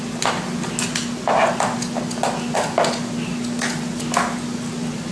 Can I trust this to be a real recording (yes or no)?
yes